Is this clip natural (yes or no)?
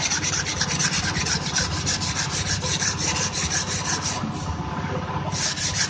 yes